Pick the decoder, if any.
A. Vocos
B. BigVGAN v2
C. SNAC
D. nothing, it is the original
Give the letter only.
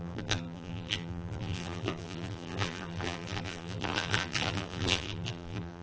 B